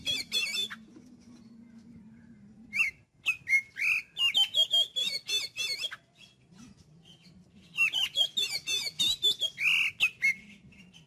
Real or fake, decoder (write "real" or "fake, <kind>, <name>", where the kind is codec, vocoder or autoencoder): real